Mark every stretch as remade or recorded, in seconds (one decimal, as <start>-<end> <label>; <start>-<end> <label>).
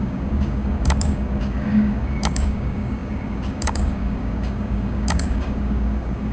0.0-6.3 remade